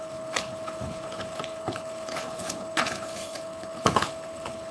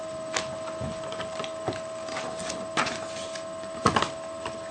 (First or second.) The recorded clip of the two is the second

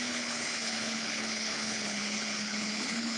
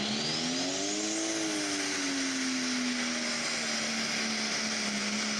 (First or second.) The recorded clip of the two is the second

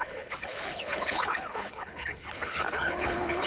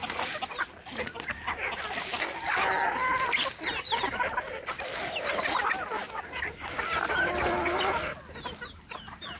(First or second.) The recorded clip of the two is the second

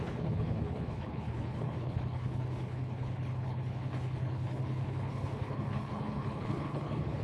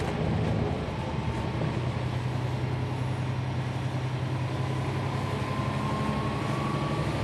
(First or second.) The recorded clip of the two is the second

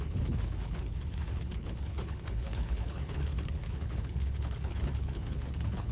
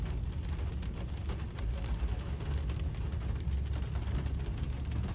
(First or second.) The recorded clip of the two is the second